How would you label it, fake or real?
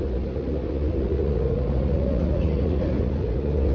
fake